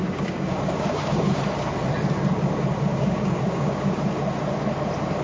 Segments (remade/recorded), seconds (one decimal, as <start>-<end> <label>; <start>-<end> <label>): 0.0-1.4 remade; 1.4-2.9 recorded; 2.9-3.9 remade; 3.9-5.2 recorded